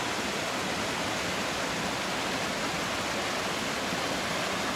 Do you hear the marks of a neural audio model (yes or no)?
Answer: no